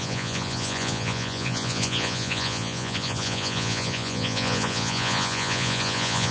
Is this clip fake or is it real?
fake